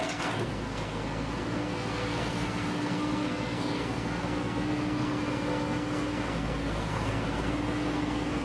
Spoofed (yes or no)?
yes